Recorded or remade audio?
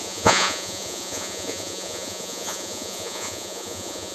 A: remade